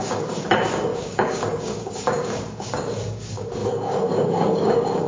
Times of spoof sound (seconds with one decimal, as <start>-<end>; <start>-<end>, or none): 0.0-5.1